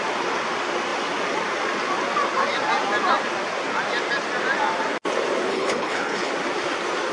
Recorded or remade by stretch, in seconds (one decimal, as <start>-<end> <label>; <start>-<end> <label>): 0.0-5.5 recorded; 5.5-6.3 remade; 6.3-7.1 recorded